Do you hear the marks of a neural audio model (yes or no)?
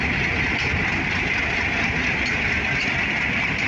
no